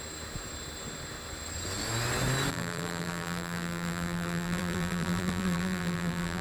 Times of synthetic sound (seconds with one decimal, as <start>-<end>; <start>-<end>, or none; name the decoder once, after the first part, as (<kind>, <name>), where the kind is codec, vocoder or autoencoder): 2.5-6.4 (vocoder, BigVGAN v2)